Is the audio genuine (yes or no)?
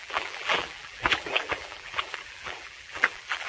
no